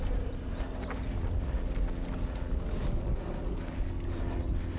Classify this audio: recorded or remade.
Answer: recorded